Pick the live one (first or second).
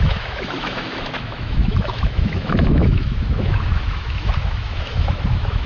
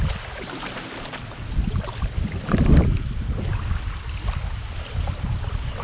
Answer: second